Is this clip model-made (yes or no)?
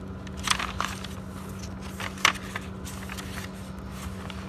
no